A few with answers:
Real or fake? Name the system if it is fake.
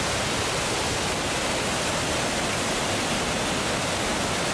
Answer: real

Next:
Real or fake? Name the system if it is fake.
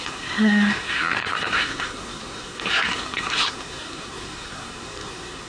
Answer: fake, codec, SNAC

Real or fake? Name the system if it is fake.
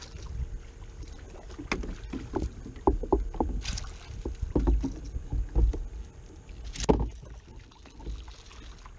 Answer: real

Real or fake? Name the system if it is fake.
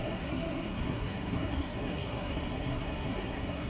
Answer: fake, codec, SNAC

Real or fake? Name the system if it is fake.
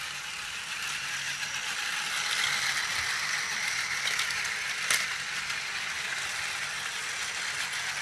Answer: real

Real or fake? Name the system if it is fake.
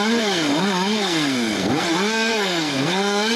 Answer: fake, codec, SNAC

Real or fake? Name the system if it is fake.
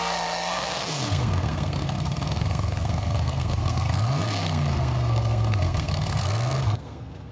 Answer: fake, codec, SNAC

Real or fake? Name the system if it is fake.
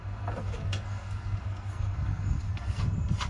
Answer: fake, codec, SNAC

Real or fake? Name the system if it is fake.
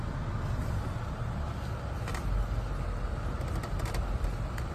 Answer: real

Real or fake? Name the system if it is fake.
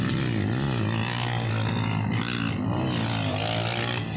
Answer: real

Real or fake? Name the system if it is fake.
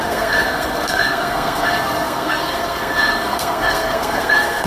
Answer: fake, codec, SNAC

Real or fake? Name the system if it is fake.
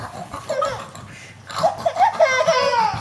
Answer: real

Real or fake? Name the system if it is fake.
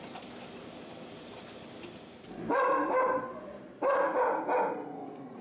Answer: real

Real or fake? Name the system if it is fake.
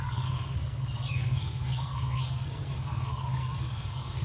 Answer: fake, codec, SNAC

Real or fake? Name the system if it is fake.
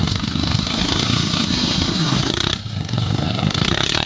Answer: fake, codec, SNAC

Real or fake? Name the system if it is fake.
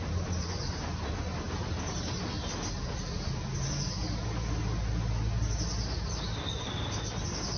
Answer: real